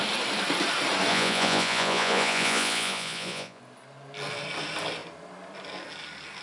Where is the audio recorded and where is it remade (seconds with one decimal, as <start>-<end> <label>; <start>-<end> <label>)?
0.0-1.1 recorded; 1.1-3.6 remade; 3.6-6.4 recorded